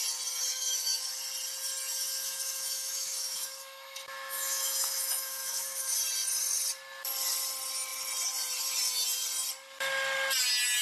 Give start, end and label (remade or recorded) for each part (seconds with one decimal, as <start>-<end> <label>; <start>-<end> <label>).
0.0-0.5 recorded; 0.5-1.1 remade; 1.1-2.0 recorded; 2.0-5.9 remade; 5.9-10.8 recorded